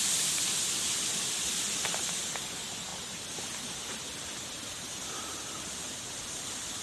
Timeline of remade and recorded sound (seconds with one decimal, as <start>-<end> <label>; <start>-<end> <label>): 0.0-6.8 recorded